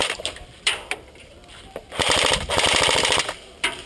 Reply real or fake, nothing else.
fake